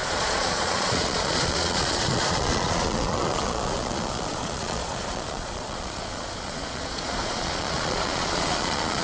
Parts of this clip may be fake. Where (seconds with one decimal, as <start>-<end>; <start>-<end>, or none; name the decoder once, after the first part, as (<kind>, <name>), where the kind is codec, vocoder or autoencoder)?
0.0-9.0 (vocoder, Vocos)